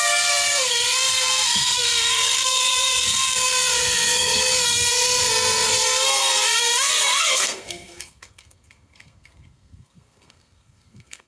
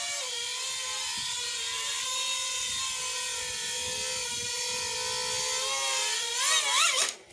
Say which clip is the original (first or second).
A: second